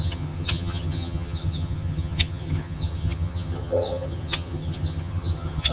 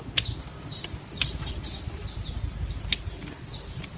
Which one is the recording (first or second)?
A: second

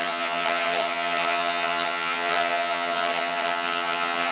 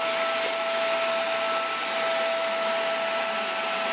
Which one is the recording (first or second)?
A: second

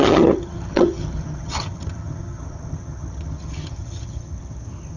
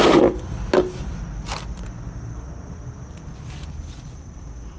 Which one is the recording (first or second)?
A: second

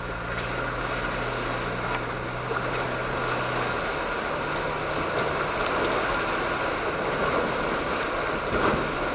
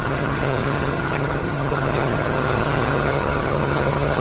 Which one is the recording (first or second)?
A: first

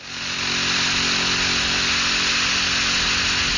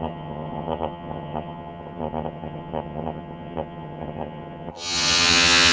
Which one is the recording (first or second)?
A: first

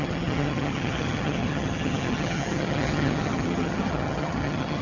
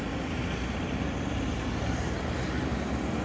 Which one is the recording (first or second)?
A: second